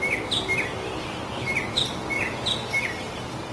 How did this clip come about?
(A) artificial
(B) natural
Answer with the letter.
B